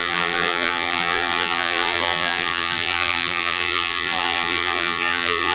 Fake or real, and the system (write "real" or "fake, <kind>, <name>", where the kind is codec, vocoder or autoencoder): fake, vocoder, BigVGAN v2